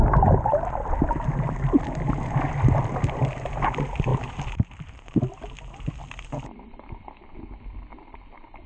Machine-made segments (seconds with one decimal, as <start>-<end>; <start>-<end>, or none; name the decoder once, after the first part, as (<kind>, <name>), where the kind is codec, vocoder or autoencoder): none